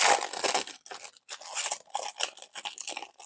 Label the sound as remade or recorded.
recorded